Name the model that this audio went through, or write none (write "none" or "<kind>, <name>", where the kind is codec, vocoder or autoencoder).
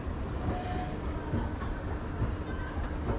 none